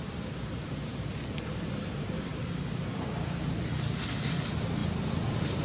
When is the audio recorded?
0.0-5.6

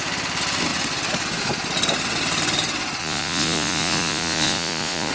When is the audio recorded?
0.0-3.0

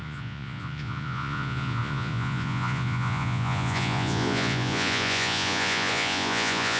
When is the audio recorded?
none

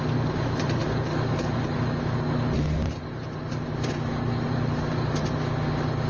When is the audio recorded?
0.0-6.1

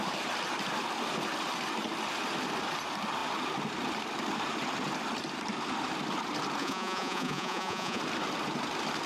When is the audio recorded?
0.0-6.6; 8.0-9.1

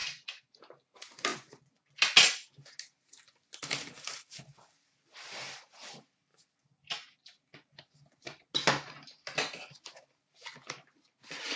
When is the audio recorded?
0.6-1.3; 2.0-11.6

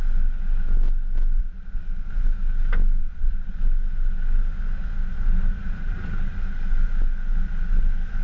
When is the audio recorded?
0.0-1.4; 2.1-3.0; 3.6-8.2

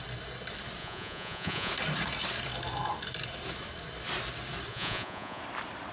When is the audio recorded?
0.0-0.8; 1.7-4.7; 5.4-5.9